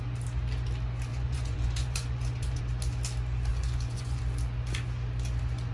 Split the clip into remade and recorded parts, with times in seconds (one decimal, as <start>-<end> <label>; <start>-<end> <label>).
0.0-1.1 recorded; 1.1-2.6 remade; 2.6-3.5 recorded; 3.5-4.2 remade; 4.2-5.7 recorded